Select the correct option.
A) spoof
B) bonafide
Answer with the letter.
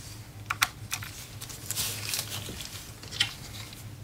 B